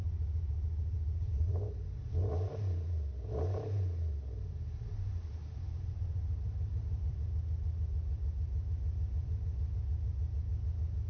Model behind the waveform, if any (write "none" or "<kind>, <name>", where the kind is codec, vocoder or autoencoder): vocoder, BigVGAN v2